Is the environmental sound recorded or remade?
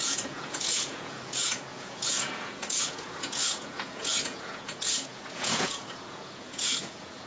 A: remade